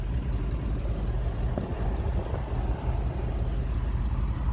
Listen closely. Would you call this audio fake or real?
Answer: real